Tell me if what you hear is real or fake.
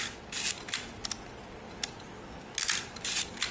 real